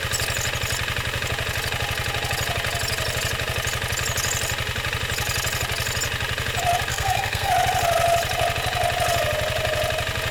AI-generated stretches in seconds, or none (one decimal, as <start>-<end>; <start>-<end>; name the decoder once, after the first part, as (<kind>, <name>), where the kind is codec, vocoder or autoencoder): 6.9-7.5 (codec, SNAC)

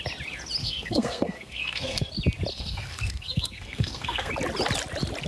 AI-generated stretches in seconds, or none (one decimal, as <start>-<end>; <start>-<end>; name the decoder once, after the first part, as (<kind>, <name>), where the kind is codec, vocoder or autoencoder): 0.6-2.1 (codec, SNAC); 2.5-4.3

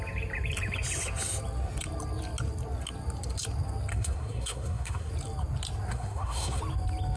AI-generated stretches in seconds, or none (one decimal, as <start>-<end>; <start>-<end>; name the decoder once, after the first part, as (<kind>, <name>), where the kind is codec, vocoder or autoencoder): 3.9-5.1 (codec, SNAC); 5.9-6.6

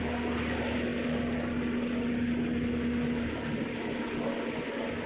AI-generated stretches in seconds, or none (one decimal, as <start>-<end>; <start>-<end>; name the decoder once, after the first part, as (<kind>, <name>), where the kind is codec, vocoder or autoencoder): none

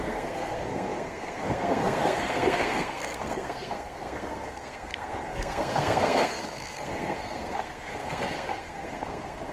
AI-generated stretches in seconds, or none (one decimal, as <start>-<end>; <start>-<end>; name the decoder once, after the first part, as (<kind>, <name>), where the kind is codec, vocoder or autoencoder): 0.0-9.5 (codec, SNAC)

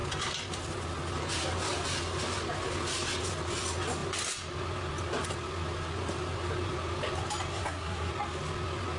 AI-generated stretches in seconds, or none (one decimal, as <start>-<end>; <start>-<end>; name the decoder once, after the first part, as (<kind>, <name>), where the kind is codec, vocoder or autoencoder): 7.5-8.1 (codec, SNAC)

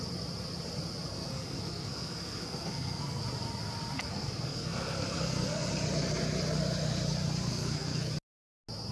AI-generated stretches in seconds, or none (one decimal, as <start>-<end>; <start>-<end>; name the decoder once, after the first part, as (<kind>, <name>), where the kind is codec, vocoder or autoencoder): 1.1-3.2 (codec, SNAC); 4.0-5.7; 7.5-8.1

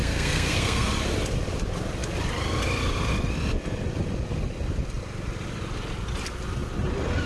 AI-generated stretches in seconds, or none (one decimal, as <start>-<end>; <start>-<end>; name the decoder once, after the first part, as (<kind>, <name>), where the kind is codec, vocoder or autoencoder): 0.0-0.9 (codec, SNAC)